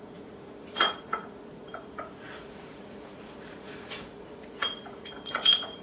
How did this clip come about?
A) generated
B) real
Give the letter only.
A